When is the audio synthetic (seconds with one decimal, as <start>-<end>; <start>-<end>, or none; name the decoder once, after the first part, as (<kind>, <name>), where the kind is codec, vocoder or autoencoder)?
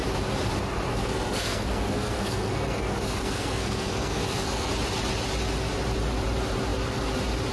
0.9-4.7 (codec, SNAC)